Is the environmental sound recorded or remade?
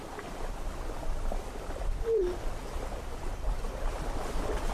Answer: remade